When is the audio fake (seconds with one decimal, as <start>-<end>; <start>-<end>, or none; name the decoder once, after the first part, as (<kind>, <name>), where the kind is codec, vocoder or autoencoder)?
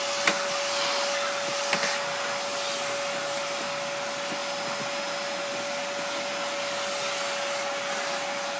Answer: none